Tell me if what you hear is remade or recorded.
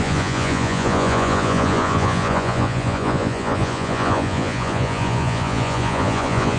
remade